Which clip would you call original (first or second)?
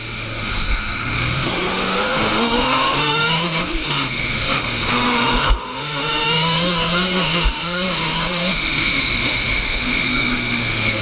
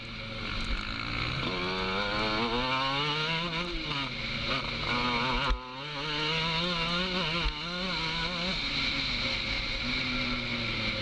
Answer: second